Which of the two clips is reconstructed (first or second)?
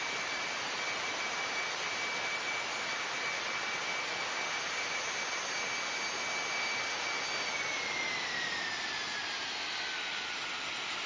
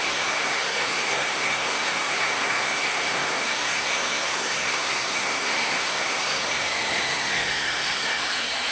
second